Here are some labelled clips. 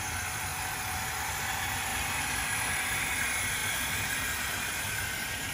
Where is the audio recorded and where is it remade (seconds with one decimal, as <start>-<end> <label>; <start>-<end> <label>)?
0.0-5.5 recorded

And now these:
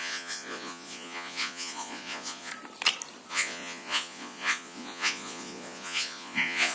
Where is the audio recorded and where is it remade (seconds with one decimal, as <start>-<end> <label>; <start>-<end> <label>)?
0.0-2.5 remade; 2.5-3.3 recorded; 3.3-6.7 remade

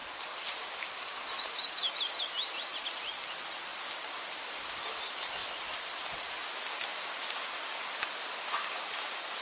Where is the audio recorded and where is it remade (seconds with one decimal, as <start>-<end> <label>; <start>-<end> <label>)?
0.0-3.0 remade; 3.0-3.7 recorded; 3.7-4.7 remade; 4.7-9.4 recorded

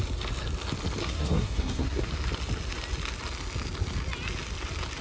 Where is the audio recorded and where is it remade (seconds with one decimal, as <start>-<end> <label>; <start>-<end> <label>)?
0.0-1.0 recorded; 1.0-2.1 remade; 2.1-5.0 recorded